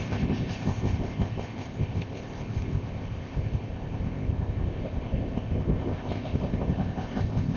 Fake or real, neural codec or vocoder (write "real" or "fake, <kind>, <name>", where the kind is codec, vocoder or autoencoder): fake, codec, ZipCodec